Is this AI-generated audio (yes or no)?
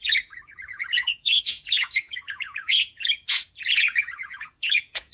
yes